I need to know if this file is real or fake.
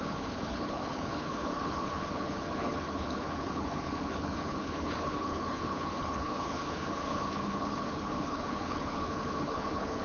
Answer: fake